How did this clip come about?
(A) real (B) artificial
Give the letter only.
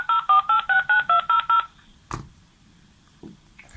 B